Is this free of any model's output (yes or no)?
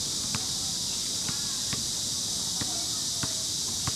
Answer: yes